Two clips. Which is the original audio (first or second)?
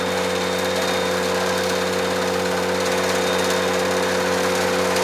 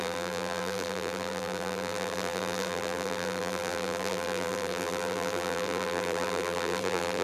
first